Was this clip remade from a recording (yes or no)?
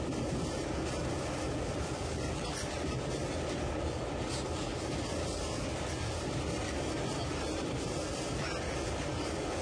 no